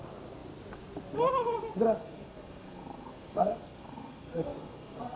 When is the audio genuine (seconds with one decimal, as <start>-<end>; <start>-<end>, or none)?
0.0-2.0